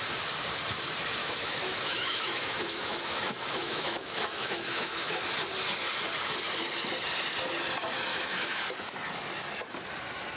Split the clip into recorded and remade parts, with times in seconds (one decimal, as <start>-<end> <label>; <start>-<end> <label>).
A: 0.0-1.2 recorded; 1.2-5.2 remade; 5.2-8.1 recorded; 8.1-8.6 remade; 8.6-10.4 recorded